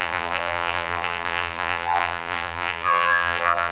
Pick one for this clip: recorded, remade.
remade